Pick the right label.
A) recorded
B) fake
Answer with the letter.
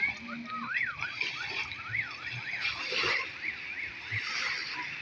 A